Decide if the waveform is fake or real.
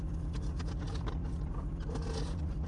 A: real